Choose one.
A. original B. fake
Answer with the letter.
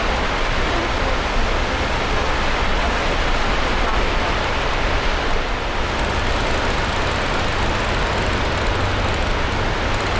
A